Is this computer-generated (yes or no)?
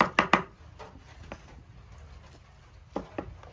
no